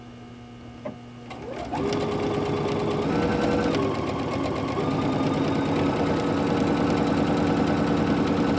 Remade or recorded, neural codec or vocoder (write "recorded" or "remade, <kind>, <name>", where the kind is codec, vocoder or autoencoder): recorded